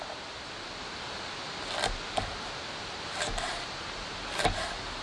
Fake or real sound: real